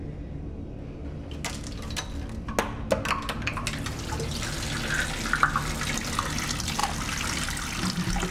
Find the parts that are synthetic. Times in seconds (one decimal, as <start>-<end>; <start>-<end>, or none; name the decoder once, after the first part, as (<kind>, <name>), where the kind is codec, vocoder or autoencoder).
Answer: none